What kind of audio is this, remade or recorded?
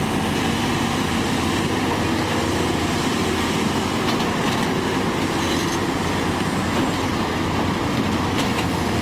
recorded